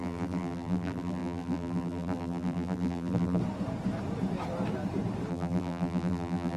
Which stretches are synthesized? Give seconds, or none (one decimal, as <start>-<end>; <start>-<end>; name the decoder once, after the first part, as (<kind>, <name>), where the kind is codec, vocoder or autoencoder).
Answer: 0.0-3.4 (vocoder, BigVGAN v2); 5.3-6.6